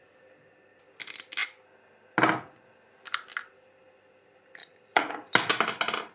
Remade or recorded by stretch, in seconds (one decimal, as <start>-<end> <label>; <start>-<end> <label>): 0.0-4.6 recorded; 4.6-5.1 remade; 5.1-6.1 recorded